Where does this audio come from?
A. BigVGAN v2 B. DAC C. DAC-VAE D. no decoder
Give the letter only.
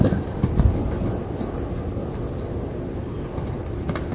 D